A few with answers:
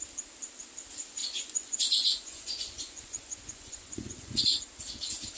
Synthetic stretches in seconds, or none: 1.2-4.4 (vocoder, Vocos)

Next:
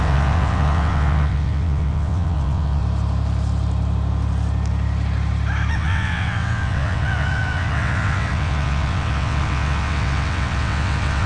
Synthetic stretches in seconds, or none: 0.0-2.8 (vocoder, WaveNeXt); 5.7-11.3

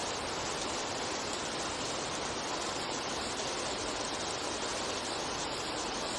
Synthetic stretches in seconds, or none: 0.0-3.7 (vocoder, BigVGAN v2); 4.7-5.2